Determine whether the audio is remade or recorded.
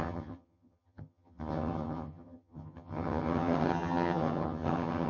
remade